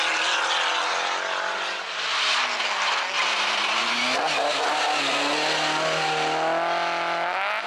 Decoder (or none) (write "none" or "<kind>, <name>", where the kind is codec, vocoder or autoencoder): none